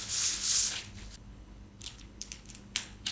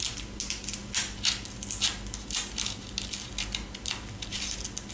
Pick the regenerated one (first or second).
first